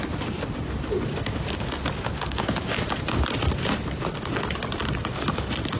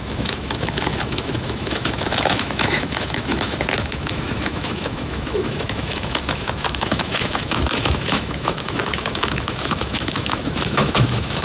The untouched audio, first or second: first